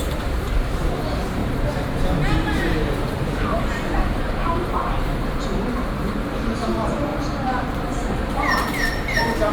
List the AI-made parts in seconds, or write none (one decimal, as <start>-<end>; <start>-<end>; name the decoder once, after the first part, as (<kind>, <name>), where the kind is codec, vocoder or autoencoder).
0.0-9.5 (vocoder, BigVGAN v2)